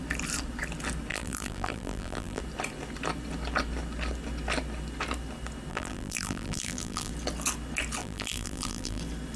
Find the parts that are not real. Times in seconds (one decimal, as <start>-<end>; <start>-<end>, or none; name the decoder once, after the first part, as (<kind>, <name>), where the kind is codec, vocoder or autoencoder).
1.1-2.4 (vocoder, BigVGAN v2); 5.7-7.1; 8.0-9.0